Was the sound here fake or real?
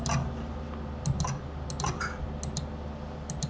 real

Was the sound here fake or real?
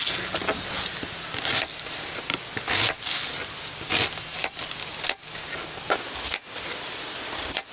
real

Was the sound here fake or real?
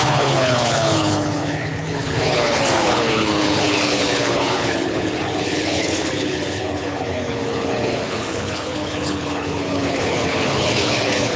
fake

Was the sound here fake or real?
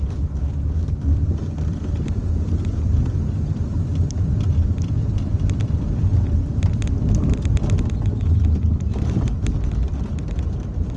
fake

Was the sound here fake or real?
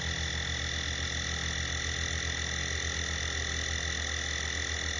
real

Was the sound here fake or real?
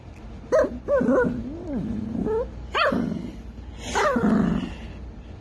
real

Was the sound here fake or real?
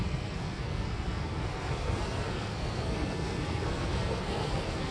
fake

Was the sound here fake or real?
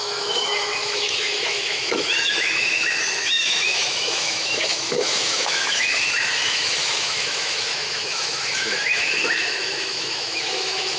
fake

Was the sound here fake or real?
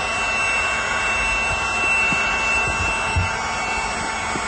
real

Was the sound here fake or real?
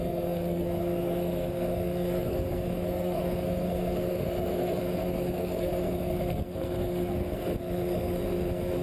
fake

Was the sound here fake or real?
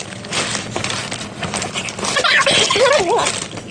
real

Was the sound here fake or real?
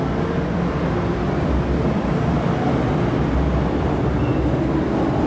real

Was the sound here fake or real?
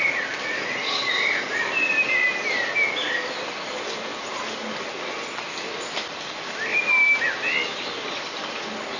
real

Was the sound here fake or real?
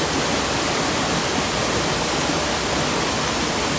real